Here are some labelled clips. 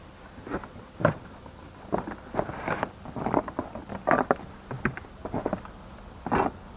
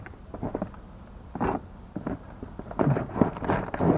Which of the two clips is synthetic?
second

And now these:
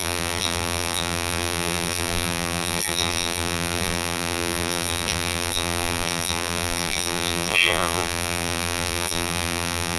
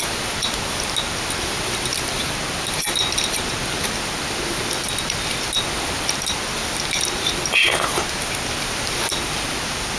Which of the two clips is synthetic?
first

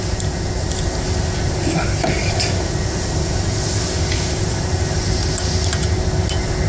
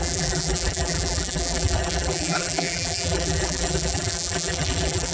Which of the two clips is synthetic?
second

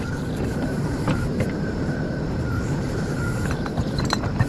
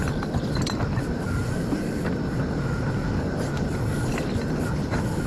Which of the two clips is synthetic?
first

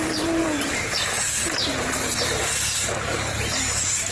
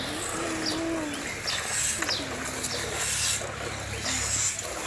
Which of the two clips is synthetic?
first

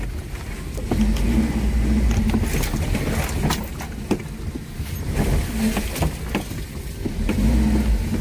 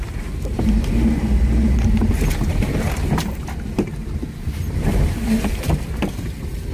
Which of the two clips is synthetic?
second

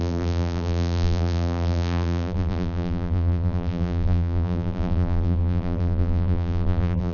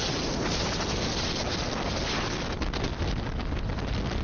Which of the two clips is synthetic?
first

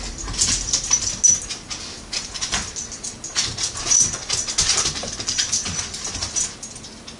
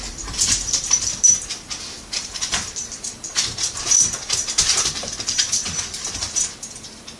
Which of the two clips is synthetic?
second